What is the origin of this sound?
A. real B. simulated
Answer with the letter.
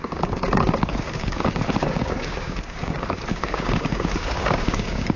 B